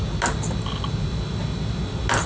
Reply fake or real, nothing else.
real